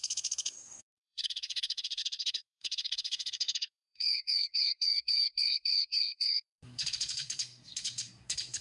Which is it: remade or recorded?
remade